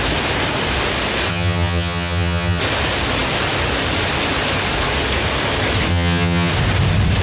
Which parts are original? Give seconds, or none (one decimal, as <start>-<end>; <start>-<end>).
0.0-1.3; 2.6-5.9; 6.5-7.2